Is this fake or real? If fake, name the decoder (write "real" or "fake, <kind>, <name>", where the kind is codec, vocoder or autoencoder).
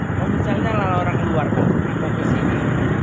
real